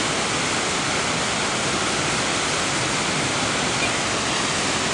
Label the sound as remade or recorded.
recorded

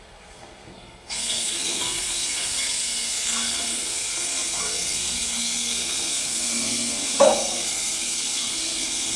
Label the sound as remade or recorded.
remade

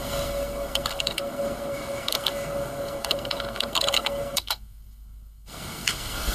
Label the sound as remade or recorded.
remade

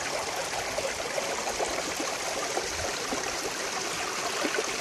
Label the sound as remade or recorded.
recorded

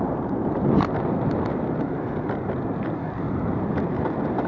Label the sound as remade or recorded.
recorded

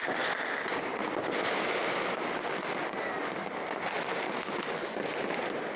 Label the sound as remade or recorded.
recorded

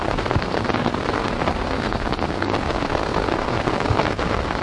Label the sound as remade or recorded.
remade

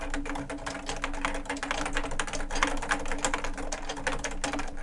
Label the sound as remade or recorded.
recorded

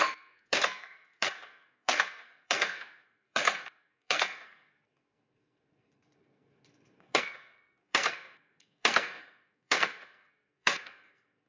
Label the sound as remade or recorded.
remade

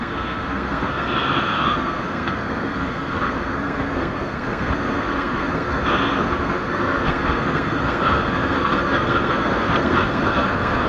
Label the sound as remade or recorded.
remade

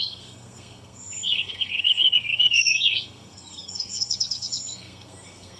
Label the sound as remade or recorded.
remade